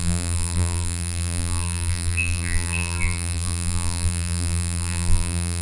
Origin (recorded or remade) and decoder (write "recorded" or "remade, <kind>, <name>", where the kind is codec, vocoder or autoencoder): remade, vocoder, BigVGAN v2